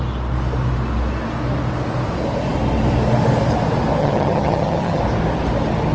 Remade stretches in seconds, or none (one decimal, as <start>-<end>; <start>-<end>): 4.0-5.0